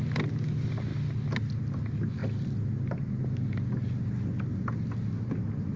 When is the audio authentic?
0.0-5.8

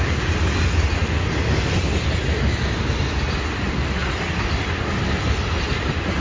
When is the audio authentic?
0.0-6.2

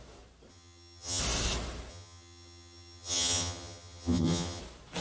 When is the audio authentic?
0.0-0.5; 1.2-1.9; 4.6-5.0

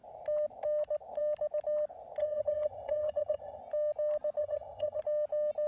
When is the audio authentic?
0.0-2.2; 3.6-4.4; 5.0-5.7